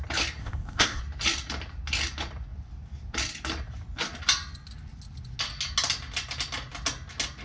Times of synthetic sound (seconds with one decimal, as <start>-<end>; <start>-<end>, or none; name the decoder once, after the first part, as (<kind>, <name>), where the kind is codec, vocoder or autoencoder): 0.4-1.0 (codec, ZipCodec)